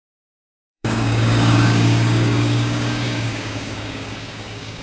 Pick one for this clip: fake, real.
fake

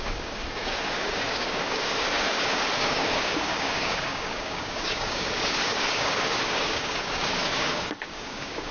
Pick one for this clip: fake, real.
fake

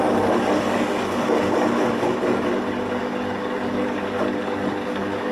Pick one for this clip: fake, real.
fake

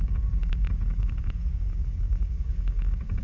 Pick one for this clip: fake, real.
fake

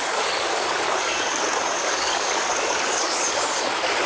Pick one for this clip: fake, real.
fake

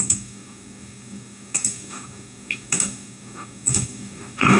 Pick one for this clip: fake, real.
fake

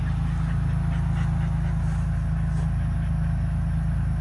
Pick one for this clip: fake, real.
real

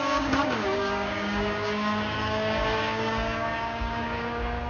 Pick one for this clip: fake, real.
fake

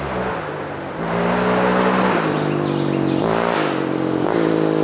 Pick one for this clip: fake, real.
real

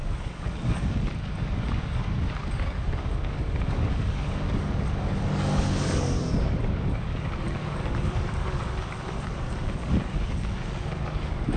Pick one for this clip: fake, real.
fake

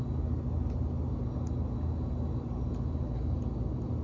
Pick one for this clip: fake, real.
real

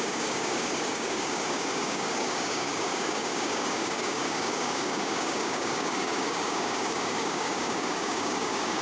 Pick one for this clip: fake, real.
fake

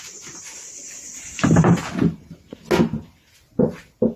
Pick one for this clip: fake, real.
real